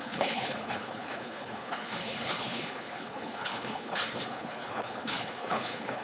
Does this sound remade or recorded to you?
remade